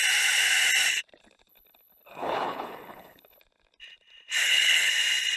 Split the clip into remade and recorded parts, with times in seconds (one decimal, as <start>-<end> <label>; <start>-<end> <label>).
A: 0.0-1.5 recorded; 1.5-3.4 remade; 3.4-4.4 recorded; 4.4-4.9 remade; 4.9-5.4 recorded